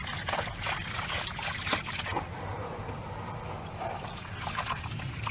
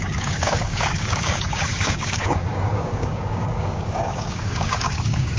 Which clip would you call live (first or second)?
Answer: first